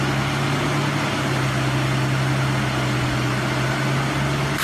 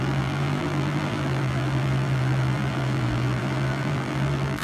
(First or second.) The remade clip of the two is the second